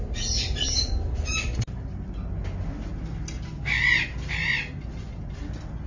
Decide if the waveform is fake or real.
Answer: real